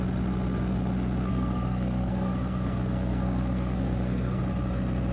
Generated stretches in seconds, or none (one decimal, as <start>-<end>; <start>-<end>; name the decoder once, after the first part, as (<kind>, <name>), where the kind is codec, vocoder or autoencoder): 1.3-4.4 (codec, SNAC)